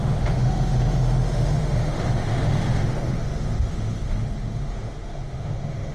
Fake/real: fake